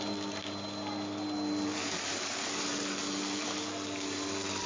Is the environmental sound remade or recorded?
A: recorded